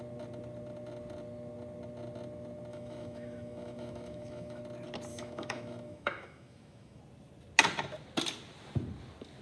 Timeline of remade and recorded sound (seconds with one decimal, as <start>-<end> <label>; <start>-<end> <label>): 0.0-2.7 recorded; 2.7-4.6 remade; 4.6-5.1 recorded; 5.1-7.0 remade; 7.0-9.4 recorded

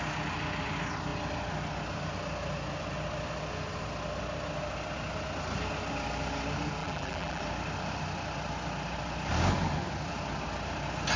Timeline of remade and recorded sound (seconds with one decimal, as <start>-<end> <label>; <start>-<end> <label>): 0.0-6.8 recorded; 6.8-7.4 remade; 7.4-11.2 recorded

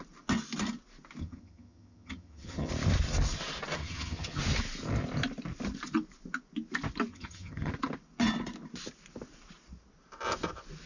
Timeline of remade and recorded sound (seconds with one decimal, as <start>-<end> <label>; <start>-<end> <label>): 0.0-1.2 recorded; 1.2-2.7 remade; 2.7-3.8 recorded; 3.8-4.4 remade; 4.4-7.1 recorded; 7.1-7.7 remade; 7.7-10.9 recorded